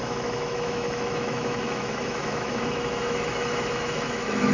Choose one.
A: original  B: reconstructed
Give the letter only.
B